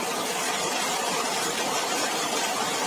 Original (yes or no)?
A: yes